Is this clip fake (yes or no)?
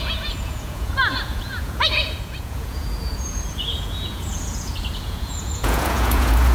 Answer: yes